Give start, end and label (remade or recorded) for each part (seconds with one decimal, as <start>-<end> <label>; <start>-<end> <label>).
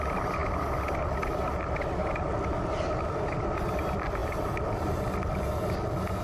0.0-6.2 recorded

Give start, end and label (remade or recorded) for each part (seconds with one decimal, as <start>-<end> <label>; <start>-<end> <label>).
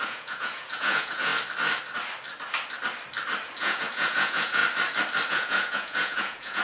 0.0-1.3 remade; 1.3-3.6 recorded; 3.6-4.6 remade; 4.6-5.3 recorded; 5.3-6.6 remade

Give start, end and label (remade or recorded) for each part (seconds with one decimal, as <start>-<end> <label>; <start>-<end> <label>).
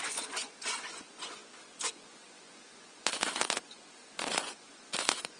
0.0-5.4 remade